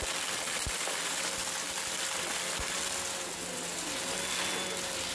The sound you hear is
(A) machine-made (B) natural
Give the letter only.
B